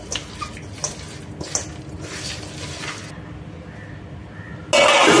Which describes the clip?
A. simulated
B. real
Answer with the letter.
B